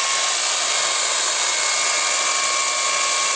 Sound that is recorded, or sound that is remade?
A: recorded